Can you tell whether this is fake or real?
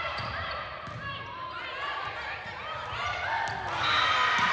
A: real